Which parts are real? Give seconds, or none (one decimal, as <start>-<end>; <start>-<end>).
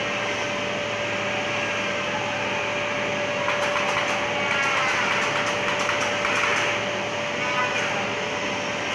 0.0-8.9